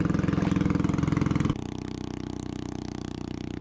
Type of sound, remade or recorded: recorded